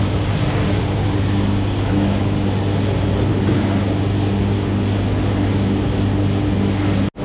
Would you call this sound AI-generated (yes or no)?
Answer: no